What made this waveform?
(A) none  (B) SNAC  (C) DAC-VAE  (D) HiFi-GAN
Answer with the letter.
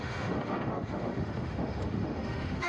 C